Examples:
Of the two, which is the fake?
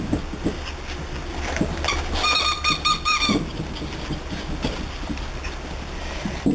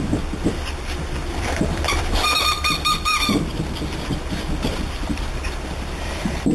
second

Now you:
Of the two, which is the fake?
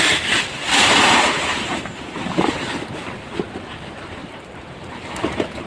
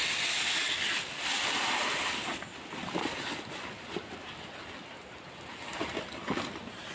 first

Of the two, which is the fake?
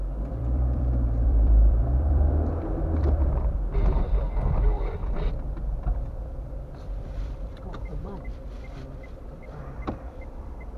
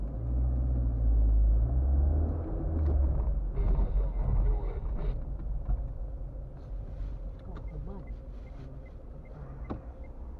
first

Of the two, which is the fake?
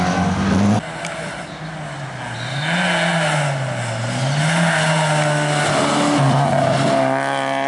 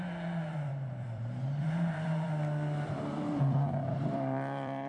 second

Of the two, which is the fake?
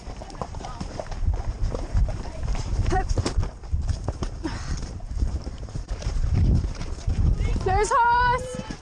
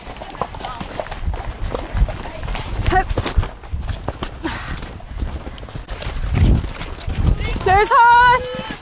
first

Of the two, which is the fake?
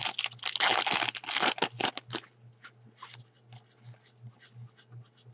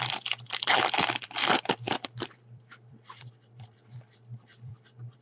second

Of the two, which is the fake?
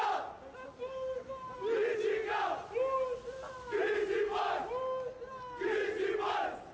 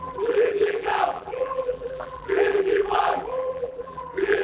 second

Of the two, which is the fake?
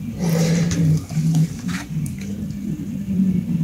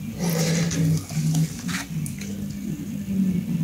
first